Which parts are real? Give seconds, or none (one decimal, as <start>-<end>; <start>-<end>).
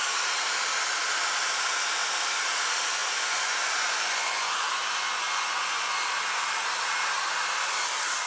0.0-3.0; 6.0-8.3